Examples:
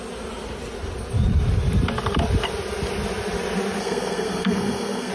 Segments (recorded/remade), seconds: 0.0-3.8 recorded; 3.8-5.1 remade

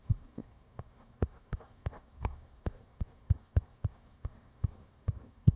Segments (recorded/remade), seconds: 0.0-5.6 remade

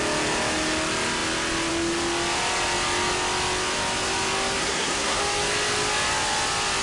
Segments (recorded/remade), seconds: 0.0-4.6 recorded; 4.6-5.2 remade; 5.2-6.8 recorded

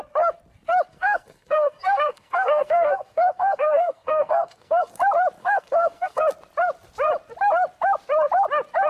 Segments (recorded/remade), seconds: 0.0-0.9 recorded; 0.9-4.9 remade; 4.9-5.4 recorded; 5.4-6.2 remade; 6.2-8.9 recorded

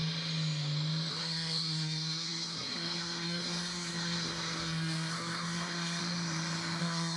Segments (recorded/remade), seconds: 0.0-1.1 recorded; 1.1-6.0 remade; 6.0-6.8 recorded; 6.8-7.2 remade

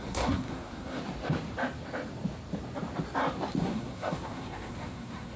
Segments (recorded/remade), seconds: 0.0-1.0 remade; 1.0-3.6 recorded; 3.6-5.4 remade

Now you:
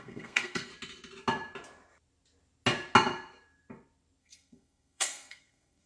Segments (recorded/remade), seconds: 0.0-0.7 remade; 0.7-4.2 recorded; 4.2-5.9 remade

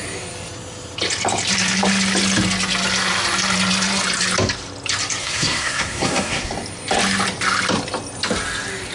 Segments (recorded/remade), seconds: 0.0-5.2 recorded; 5.2-6.5 remade; 6.5-8.9 recorded